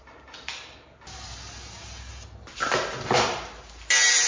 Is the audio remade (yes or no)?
no